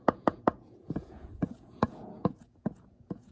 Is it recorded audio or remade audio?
remade